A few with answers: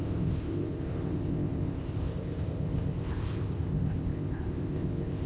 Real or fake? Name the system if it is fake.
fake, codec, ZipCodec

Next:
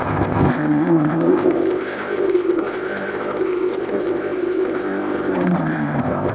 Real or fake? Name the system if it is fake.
fake, codec, ZipCodec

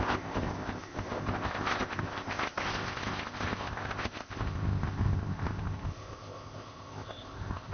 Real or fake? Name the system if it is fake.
fake, codec, ZipCodec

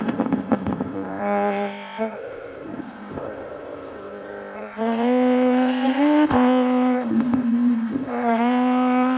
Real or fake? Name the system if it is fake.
fake, codec, ZipCodec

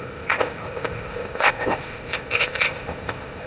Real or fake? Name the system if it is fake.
fake, codec, ZipCodec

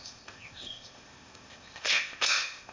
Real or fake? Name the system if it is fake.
fake, codec, ZipCodec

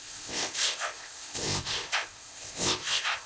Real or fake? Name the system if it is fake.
fake, codec, ZipCodec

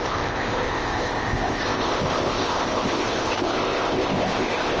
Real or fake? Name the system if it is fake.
fake, codec, ZipCodec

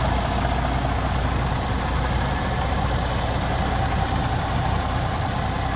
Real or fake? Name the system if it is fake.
real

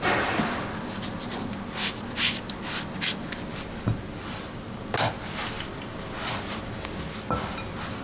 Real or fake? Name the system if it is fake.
real